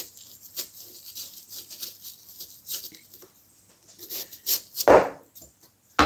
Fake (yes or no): no